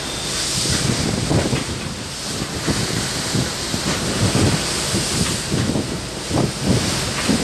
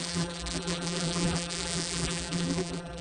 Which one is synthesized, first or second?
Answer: second